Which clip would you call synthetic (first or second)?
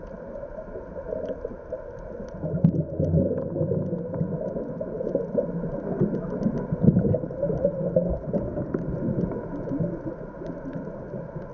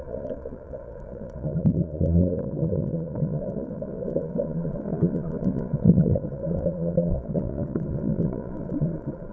second